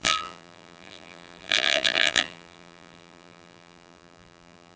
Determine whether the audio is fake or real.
fake